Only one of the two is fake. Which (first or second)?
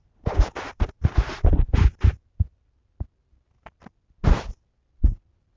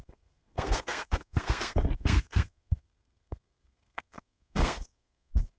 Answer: second